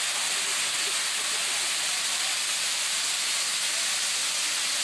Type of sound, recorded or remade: recorded